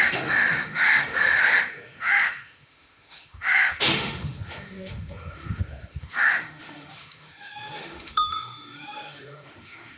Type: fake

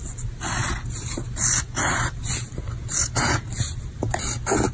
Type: real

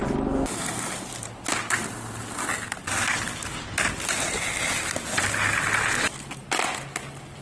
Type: real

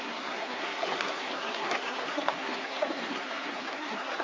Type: fake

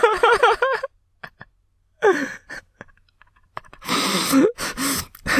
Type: real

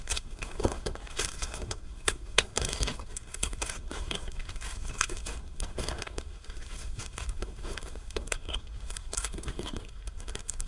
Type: fake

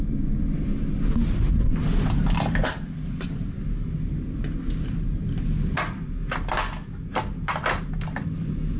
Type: real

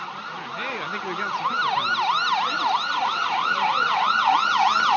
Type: real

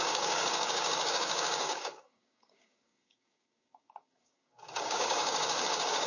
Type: fake